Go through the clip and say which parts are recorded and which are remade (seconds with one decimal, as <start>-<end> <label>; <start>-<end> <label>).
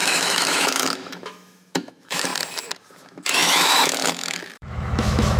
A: 0.0-2.3 remade; 2.3-2.9 recorded; 2.9-5.4 remade